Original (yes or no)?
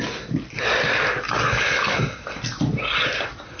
yes